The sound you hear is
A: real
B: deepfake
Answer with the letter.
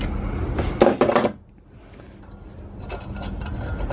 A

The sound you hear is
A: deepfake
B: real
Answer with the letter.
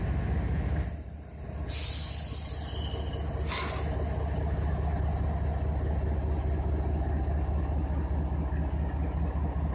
B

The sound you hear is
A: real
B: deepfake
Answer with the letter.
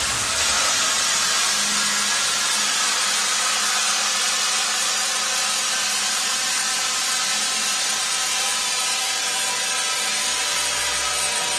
A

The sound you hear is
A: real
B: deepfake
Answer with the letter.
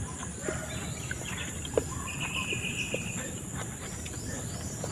A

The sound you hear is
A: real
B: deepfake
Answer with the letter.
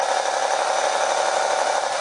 A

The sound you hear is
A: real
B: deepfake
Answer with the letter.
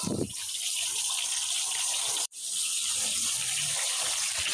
B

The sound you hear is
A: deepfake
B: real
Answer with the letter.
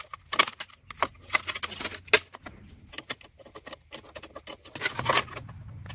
B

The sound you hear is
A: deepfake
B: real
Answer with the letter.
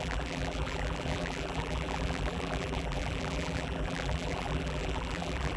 A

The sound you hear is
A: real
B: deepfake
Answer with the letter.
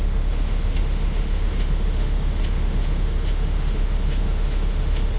B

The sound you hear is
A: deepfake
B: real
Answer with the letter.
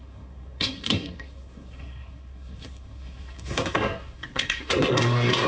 A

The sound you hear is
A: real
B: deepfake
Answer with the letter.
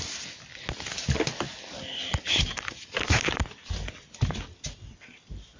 A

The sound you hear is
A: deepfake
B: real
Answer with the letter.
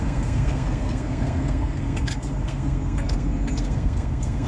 A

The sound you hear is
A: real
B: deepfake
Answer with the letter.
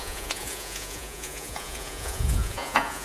B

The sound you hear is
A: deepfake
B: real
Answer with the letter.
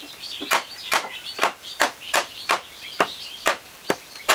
A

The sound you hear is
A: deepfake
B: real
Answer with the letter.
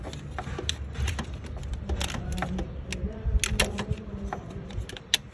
B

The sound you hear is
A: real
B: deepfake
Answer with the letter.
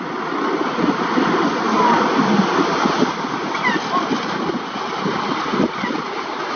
A